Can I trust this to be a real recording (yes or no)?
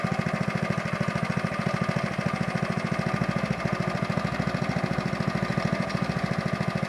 yes